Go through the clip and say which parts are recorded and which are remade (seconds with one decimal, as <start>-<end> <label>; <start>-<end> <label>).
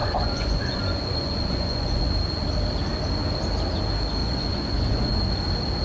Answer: 0.0-2.1 remade; 2.1-4.2 recorded; 4.2-5.3 remade; 5.3-5.8 recorded